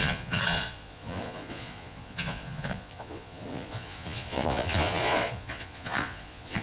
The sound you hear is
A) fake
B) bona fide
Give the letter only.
A